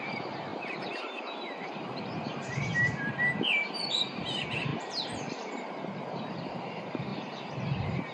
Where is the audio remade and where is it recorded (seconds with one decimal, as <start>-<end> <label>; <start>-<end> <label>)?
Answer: 0.0-4.7 remade; 4.7-6.4 recorded; 6.4-8.1 remade